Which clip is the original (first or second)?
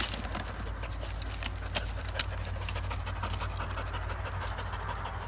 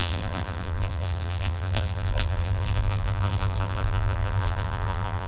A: first